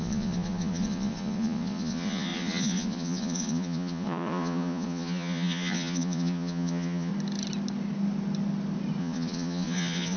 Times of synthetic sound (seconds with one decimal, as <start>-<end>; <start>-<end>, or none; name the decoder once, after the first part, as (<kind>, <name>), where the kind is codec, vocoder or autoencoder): 0.0-7.1 (vocoder, Vocos); 9.0-10.2

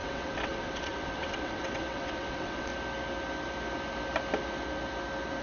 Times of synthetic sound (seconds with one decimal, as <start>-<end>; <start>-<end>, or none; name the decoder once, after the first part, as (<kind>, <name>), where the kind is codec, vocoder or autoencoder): 0.0-2.7 (vocoder, WaveNeXt)

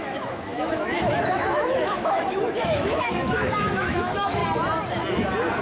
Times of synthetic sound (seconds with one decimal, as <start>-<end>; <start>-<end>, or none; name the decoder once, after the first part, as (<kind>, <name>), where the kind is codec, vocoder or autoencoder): 0.0-4.4 (autoencoder, DAC-VAE)

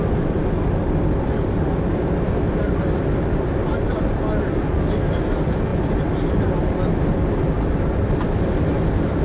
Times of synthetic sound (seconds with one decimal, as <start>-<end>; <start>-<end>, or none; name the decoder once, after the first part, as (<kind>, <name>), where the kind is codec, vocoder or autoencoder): none

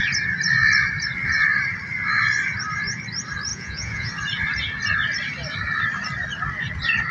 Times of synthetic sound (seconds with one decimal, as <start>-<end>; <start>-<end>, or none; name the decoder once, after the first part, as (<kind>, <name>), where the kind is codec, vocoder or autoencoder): 3.5-4.1 (vocoder, Vocos)

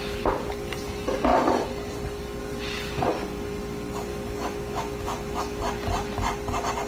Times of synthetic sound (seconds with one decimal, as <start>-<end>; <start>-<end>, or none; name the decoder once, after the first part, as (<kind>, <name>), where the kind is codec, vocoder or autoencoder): 4.1-5.6 (autoencoder, DAC-VAE)

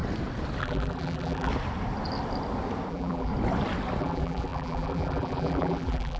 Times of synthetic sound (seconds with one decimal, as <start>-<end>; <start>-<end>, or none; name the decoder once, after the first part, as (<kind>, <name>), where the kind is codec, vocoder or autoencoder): 0.6-1.5 (vocoder, BigVGAN v2); 2.9-3.3; 4.0-6.2